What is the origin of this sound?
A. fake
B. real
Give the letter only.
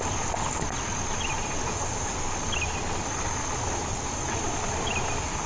B